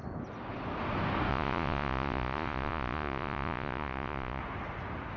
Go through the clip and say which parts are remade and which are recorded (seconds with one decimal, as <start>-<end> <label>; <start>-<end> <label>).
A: 0.0-1.3 recorded; 1.3-4.4 remade; 4.4-5.2 recorded

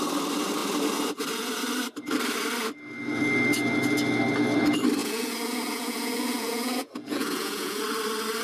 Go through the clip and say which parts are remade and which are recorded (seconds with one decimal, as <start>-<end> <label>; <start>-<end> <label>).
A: 0.0-5.0 recorded; 5.0-7.8 remade; 7.8-8.4 recorded